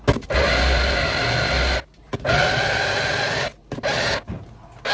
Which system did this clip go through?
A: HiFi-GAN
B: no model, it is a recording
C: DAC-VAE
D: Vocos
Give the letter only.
B